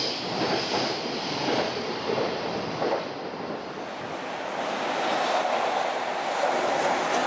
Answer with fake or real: real